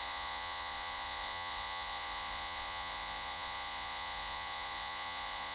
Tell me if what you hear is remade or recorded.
remade